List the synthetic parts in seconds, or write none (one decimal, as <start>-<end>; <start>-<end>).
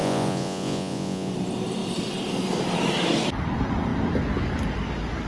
0.0-1.3